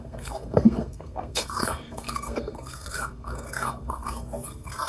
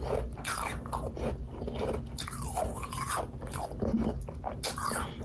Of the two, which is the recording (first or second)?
second